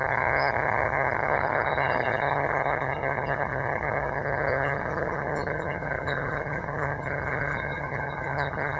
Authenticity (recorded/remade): remade